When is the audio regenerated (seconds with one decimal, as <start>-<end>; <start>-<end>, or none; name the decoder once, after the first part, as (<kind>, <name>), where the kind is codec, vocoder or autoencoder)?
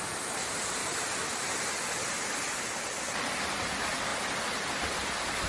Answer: none